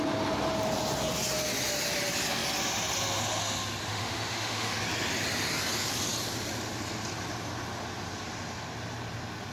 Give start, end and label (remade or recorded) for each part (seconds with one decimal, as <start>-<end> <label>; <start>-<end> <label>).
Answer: 0.0-3.9 recorded; 3.9-4.8 remade; 4.8-9.5 recorded